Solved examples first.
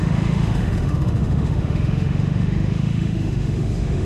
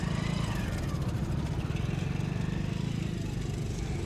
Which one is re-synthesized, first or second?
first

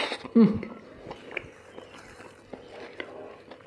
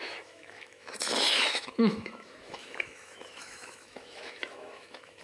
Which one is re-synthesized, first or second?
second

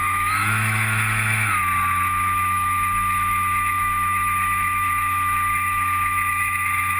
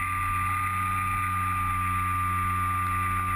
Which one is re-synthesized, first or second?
first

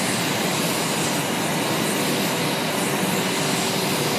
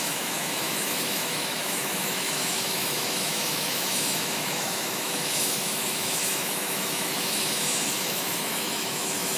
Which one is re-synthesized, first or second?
second